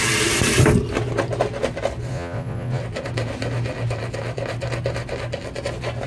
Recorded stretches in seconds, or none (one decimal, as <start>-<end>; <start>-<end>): 0.0-2.1; 2.8-6.1